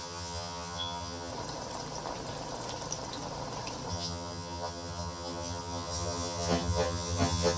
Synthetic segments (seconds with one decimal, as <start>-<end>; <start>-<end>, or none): 0.0-1.3; 3.9-7.6